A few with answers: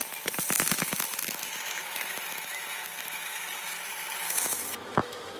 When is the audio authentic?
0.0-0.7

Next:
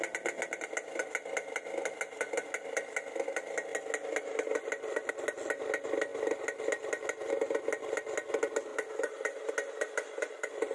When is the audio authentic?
0.0-8.7; 9.5-10.7

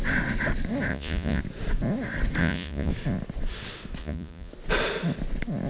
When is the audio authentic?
0.0-0.9; 1.4-2.4; 2.9-4.0; 4.5-5.7